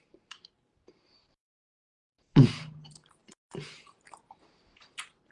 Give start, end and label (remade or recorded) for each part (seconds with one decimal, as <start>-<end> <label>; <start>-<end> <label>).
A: 0.0-5.3 remade